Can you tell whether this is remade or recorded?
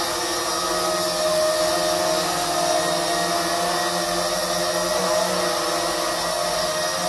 recorded